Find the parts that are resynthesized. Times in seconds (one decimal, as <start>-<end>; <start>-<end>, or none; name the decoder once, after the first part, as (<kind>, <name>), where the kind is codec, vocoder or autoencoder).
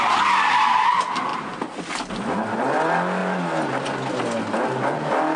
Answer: none